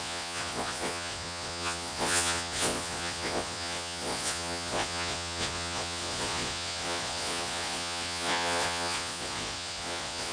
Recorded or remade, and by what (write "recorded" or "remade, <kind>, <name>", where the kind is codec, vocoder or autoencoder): remade, vocoder, Vocos